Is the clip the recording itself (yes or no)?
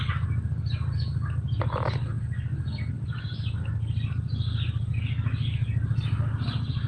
yes